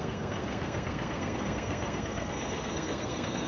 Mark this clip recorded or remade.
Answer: remade